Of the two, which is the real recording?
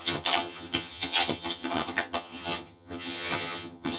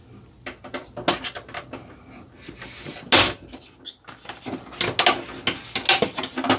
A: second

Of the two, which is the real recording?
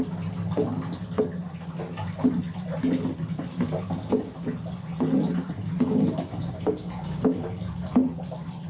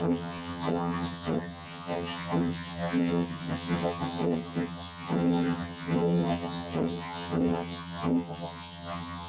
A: first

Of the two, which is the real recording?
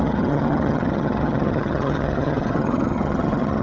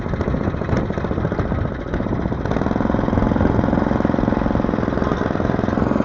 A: second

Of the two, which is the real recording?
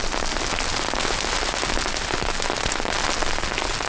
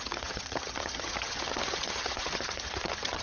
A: first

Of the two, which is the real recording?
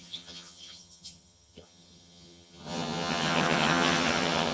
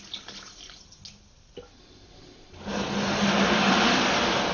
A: second